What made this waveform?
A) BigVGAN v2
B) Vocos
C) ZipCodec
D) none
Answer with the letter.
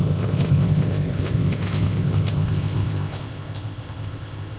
C